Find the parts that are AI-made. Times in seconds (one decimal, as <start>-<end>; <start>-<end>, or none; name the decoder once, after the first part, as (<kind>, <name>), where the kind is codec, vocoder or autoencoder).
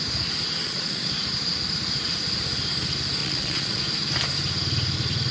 0.6-1.1 (vocoder, Vocos); 3.2-3.8